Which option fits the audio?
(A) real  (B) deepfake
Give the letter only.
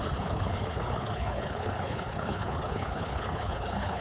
B